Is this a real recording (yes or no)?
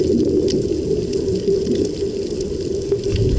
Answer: yes